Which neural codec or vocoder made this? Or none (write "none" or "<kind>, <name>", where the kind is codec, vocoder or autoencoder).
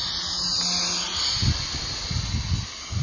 none